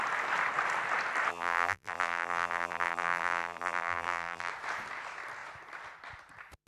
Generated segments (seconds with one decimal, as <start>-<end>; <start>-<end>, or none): 1.3-4.5